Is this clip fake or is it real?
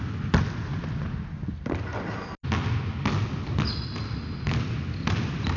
real